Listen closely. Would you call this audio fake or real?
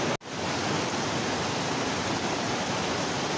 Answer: real